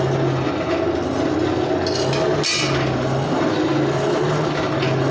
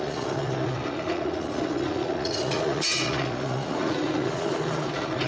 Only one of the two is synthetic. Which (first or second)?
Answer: second